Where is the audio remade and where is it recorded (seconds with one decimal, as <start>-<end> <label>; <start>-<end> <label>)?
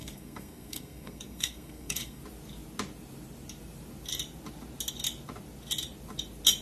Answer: 0.0-2.2 remade; 2.2-6.6 recorded